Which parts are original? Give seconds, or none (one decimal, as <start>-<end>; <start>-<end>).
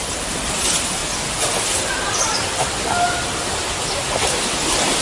0.0-5.0